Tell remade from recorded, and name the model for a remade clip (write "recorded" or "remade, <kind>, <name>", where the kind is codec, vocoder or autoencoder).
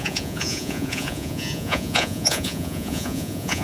remade, vocoder, Vocos